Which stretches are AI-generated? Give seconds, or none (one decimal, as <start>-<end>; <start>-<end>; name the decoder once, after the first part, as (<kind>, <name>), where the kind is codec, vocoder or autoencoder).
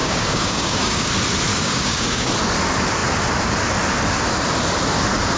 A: 0.0-1.1 (codec, DAC); 1.5-2.3